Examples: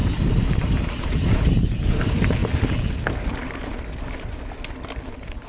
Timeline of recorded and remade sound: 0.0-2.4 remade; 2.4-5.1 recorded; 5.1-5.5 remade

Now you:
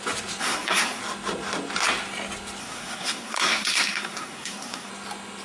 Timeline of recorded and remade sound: 0.0-0.4 recorded; 0.4-1.0 remade; 1.0-2.6 recorded; 2.6-4.9 remade; 4.9-5.4 recorded

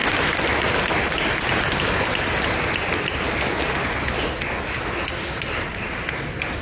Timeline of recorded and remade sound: 0.0-6.6 recorded

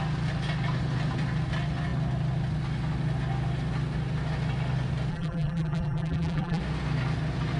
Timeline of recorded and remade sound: 0.0-5.1 recorded; 5.1-6.6 remade; 6.6-7.6 recorded

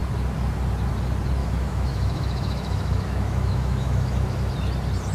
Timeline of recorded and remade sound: 0.0-1.4 recorded; 1.4-4.5 remade; 4.5-5.1 recorded

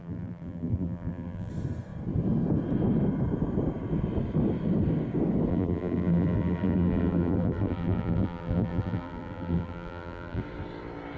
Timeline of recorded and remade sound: 0.0-1.5 remade; 1.5-5.5 recorded; 5.5-10.4 remade; 10.4-11.2 recorded

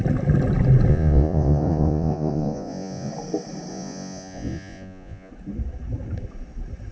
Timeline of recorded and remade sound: 0.0-0.9 recorded; 0.9-3.1 remade; 3.1-3.7 recorded; 3.7-5.3 remade; 5.3-6.9 recorded

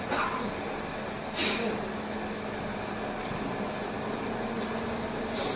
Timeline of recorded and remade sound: 0.0-5.6 recorded